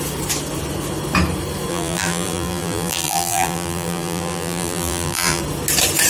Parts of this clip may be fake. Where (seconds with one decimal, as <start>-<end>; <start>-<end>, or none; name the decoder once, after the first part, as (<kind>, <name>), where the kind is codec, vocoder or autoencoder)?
1.7-5.4 (vocoder, BigVGAN v2)